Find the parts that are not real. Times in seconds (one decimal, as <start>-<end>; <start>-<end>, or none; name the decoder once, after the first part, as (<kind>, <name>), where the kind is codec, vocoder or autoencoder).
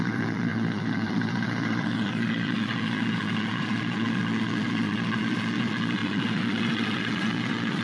0.0-7.8 (vocoder, Vocos)